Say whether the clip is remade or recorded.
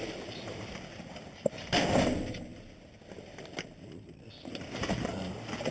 recorded